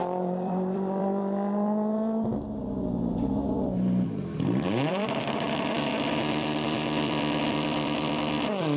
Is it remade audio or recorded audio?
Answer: remade